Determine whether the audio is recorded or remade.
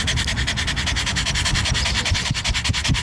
recorded